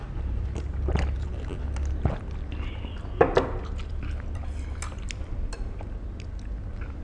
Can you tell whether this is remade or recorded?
recorded